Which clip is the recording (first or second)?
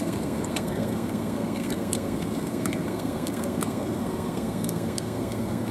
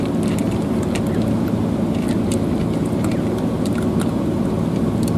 second